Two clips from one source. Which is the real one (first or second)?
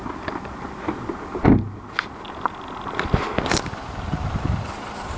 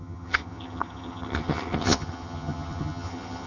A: first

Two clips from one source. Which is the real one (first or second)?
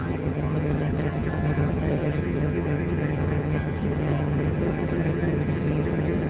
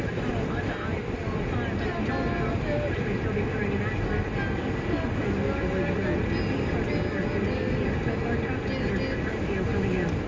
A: second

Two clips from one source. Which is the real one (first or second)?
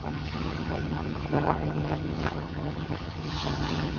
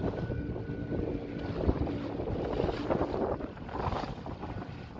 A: second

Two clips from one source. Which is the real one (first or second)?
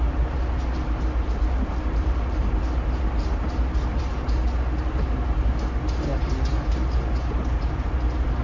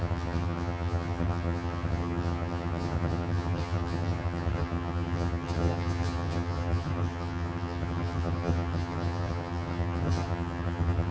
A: first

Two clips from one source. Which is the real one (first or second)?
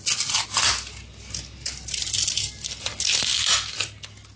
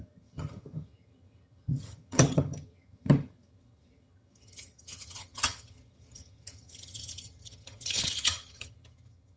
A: first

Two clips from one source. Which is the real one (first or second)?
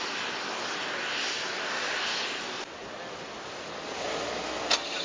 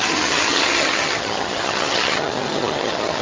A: first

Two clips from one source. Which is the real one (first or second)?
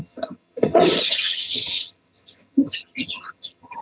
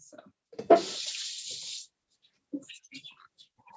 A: second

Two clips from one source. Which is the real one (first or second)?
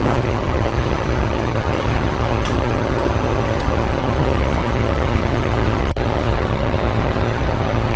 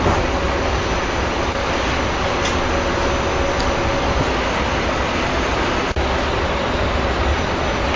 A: second